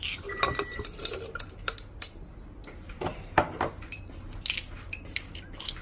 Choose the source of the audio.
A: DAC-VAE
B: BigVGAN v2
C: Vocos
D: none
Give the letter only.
D